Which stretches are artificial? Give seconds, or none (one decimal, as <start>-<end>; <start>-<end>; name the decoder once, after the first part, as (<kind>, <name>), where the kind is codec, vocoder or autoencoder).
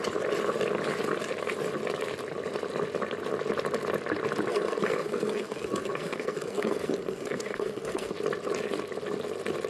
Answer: 4.5-8.1 (codec, SNAC)